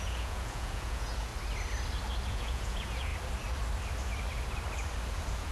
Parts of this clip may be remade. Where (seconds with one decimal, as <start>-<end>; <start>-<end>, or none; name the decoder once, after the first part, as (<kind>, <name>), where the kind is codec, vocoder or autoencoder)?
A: 0.0-1.3 (vocoder, Vocos); 2.3-3.1; 5.1-5.5

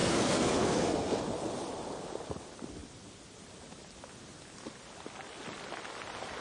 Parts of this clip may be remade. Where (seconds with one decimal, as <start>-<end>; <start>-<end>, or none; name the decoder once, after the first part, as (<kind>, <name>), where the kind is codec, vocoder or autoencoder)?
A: 0.0-1.2 (codec, SNAC)

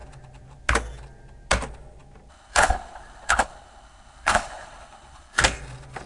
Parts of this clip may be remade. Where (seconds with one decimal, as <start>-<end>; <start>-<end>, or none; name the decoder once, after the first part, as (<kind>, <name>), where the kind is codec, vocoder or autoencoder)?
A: 2.3-5.4 (codec, HILCodec)

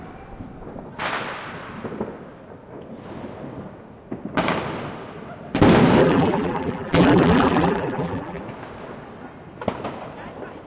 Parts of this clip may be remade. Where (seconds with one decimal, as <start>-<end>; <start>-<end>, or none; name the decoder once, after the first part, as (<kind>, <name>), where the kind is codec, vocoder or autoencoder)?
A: 6.0-8.4 (vocoder, BigVGAN v2)

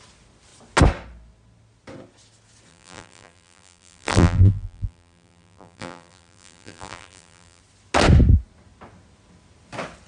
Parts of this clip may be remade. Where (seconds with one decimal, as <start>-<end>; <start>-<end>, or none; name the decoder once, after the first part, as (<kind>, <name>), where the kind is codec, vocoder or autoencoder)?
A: 2.7-7.6 (vocoder, BigVGAN v2)

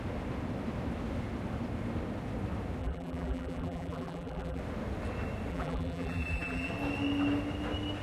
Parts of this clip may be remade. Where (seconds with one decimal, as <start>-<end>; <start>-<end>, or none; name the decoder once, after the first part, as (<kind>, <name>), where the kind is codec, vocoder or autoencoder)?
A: 2.8-4.6 (vocoder, BigVGAN v2); 5.5-6.7

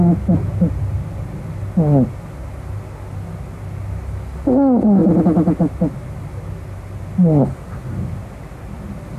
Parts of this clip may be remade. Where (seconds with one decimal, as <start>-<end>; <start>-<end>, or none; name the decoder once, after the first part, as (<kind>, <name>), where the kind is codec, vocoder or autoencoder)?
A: none

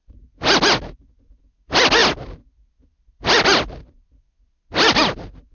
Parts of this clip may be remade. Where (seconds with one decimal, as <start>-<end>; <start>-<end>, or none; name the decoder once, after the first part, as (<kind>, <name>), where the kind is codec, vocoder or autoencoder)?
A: none